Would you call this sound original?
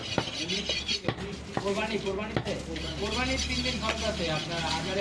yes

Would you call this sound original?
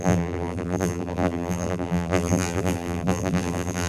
no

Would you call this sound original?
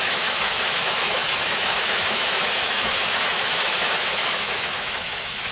no